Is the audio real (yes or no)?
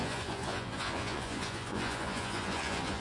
no